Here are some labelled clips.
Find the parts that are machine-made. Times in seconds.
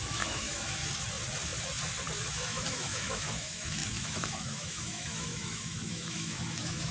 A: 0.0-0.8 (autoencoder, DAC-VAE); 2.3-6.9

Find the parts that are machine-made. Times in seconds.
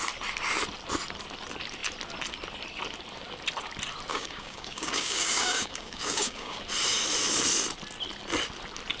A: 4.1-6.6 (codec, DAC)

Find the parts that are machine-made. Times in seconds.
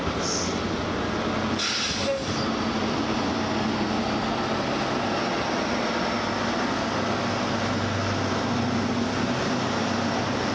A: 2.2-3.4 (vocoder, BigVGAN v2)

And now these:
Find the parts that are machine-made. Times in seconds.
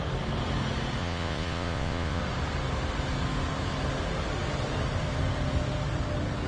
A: 1.0-2.2 (vocoder, Vocos)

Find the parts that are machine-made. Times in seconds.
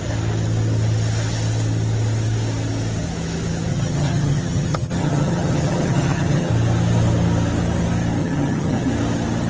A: 3.7-6.5 (vocoder, HiFi-GAN); 8.2-8.9